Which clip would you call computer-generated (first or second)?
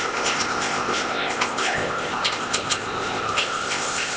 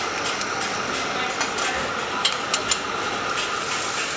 first